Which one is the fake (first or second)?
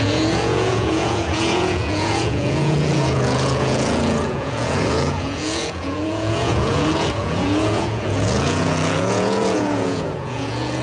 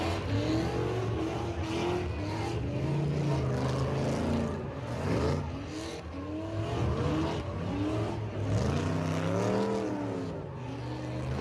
first